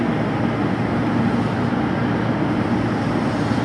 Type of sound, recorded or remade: remade